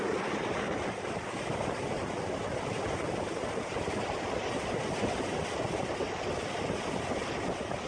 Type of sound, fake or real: real